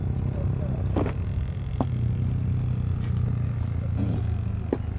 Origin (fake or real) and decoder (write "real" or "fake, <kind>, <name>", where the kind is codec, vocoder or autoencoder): real